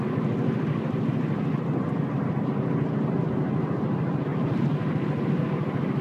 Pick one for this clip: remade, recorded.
remade